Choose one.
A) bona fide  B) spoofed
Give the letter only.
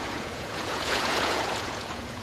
B